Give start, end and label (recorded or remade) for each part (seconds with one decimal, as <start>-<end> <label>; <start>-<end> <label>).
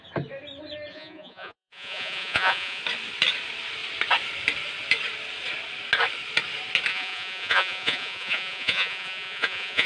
0.0-0.9 recorded; 0.9-2.8 remade; 2.8-6.9 recorded; 6.9-9.9 remade